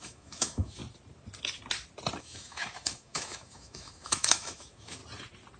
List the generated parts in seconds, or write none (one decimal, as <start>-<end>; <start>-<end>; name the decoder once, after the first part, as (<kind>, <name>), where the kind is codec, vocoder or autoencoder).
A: 0.0-0.8 (autoencoder, DAC-VAE); 2.2-5.0